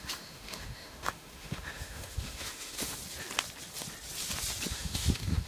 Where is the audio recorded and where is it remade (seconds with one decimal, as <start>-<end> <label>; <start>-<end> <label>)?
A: 0.0-3.0 remade; 3.0-4.7 recorded; 4.7-5.5 remade